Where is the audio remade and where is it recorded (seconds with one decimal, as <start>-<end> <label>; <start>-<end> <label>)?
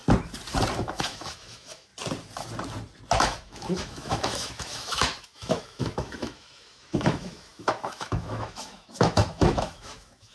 0.0-0.8 recorded; 0.8-1.9 remade; 1.9-3.2 recorded; 3.2-10.3 remade